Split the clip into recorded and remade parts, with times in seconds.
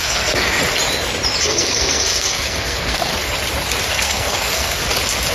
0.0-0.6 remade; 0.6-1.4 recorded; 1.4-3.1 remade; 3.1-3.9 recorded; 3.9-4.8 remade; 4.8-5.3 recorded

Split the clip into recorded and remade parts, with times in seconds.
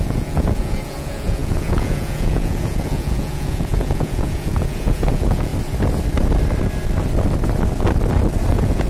0.0-5.5 remade; 5.5-8.5 recorded; 8.5-8.9 remade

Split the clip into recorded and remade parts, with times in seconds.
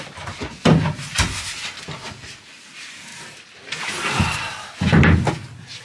0.0-5.8 recorded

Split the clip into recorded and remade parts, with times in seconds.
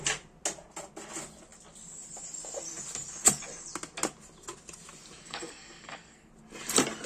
0.0-5.2 recorded; 5.2-6.3 remade; 6.3-7.1 recorded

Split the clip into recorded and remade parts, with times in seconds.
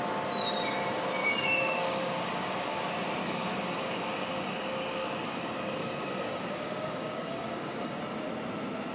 0.0-1.2 recorded; 1.2-2.8 remade; 2.8-3.2 recorded; 3.2-8.0 remade; 8.0-8.9 recorded